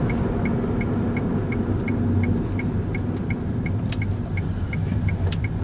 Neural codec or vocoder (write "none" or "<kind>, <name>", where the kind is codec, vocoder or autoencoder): none